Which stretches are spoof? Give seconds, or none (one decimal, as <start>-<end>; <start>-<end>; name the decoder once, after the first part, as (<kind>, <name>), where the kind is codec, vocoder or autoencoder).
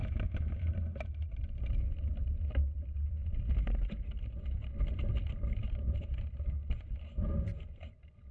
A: 0.0-0.7 (autoencoder, DAC-VAE)